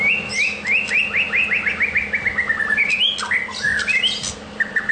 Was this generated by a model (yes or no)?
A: no